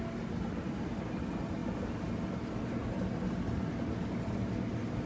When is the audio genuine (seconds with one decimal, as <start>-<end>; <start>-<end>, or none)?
0.0-5.1